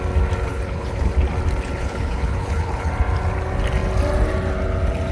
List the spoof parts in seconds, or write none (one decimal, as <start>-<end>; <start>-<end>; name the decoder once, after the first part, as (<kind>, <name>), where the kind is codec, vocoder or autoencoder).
0.5-1.1 (codec, HILCodec); 1.8-2.9